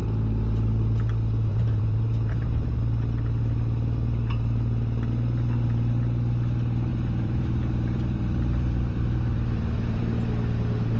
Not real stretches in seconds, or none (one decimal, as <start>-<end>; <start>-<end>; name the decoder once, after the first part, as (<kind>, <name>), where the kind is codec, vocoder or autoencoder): 1.5-2.8 (vocoder, BigVGAN v2); 6.9-10.0